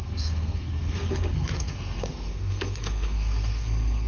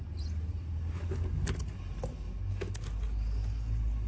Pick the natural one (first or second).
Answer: second